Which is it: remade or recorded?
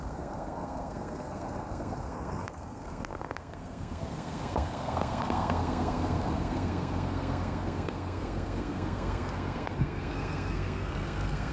remade